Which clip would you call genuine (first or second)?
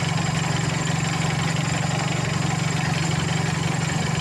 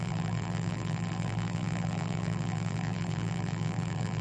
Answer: first